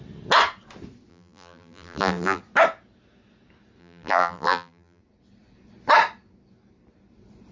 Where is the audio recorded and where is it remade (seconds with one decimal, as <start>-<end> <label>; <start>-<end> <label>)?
0.0-1.1 recorded; 1.1-2.4 remade; 2.4-3.8 recorded; 3.8-5.0 remade; 5.0-7.5 recorded